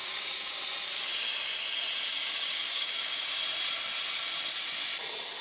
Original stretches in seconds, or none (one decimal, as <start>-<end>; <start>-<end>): 0.6-2.6; 3.2-5.4